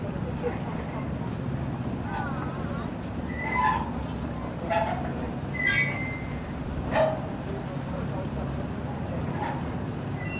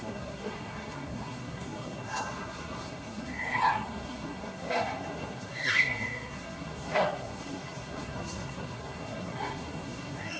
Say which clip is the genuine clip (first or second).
first